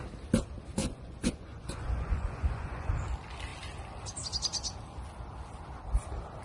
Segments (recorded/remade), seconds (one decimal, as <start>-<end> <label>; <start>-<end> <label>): 0.0-0.8 recorded; 0.8-2.9 remade; 2.9-6.4 recorded